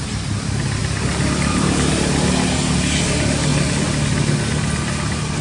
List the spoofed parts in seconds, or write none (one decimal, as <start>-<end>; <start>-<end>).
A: 0.8-1.9; 3.5-4.2

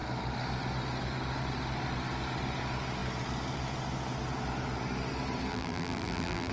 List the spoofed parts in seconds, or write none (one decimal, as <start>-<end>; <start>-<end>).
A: 5.5-6.5

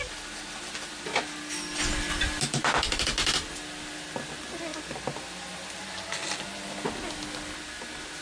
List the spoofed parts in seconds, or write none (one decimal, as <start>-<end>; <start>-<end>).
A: none